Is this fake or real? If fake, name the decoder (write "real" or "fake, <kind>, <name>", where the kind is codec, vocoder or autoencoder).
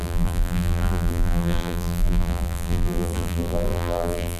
fake, vocoder, BigVGAN v2